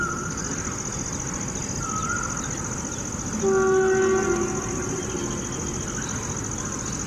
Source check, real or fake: real